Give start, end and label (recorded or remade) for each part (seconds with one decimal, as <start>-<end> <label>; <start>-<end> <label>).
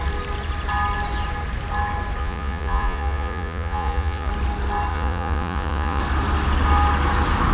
0.0-2.2 recorded; 2.2-4.3 remade; 4.3-4.9 recorded; 4.9-6.0 remade; 6.0-7.5 recorded